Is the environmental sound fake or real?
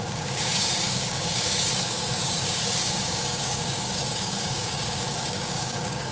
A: fake